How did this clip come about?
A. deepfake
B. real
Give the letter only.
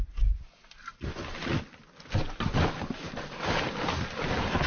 B